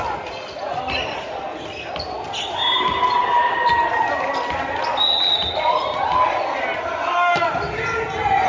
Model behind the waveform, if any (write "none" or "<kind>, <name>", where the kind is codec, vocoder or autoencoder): none